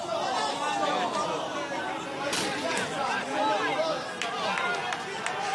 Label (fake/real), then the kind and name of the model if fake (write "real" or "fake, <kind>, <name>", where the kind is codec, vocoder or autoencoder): real